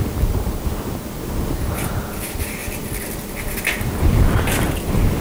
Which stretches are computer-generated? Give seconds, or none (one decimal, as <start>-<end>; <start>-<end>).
none